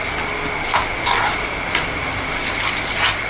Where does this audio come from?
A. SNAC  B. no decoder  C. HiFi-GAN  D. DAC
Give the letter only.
B